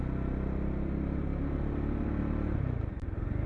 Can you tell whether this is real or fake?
real